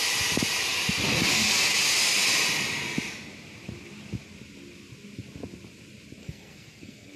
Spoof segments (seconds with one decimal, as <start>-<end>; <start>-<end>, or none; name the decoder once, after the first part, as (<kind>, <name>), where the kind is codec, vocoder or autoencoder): 6.2-7.2 (codec, SNAC)